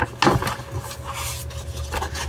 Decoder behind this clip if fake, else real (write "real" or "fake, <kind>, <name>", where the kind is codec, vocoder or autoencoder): real